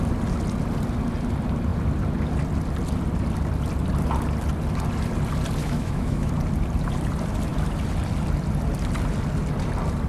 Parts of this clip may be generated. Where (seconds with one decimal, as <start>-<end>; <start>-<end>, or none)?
5.6-6.3